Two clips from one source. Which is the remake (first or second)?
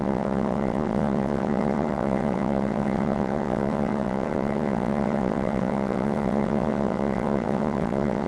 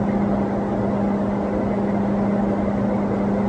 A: first